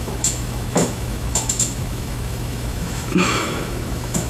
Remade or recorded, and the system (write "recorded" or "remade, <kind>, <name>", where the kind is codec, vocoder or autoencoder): remade, autoencoder, DAC-VAE